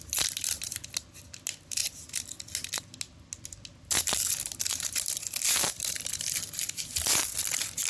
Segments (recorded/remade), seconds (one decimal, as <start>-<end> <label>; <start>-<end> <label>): 0.0-7.9 recorded